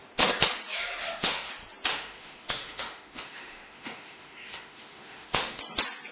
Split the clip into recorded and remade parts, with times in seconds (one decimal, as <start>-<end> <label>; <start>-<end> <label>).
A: 0.0-1.0 recorded; 1.0-1.5 remade; 1.5-1.9 recorded; 1.9-5.6 remade; 5.6-6.1 recorded